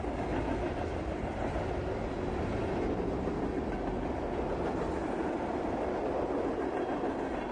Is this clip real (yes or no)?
yes